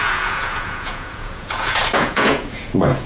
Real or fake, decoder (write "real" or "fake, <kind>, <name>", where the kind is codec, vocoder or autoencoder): fake, vocoder, Vocos